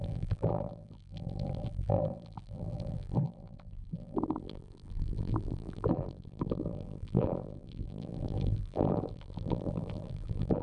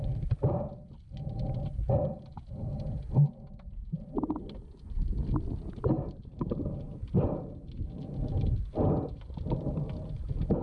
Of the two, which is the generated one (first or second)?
first